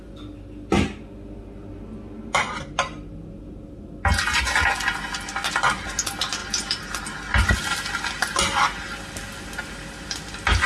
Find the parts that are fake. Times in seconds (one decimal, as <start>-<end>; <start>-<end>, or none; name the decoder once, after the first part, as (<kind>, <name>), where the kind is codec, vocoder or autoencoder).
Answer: none